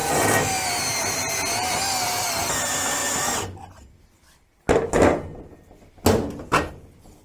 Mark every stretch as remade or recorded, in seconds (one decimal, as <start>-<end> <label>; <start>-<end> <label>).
0.0-7.2 recorded